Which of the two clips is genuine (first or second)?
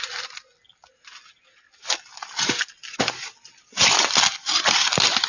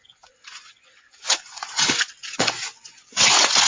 first